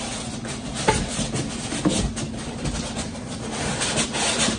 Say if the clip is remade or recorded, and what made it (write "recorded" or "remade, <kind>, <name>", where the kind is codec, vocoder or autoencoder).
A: recorded